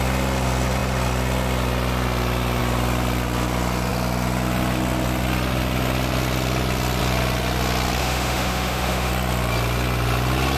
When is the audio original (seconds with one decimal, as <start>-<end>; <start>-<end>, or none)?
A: 0.0-8.0; 9.1-10.6